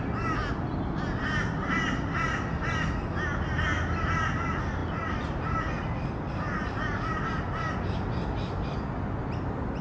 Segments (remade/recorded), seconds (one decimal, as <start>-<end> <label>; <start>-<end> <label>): 0.0-9.8 recorded